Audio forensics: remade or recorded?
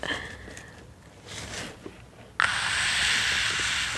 recorded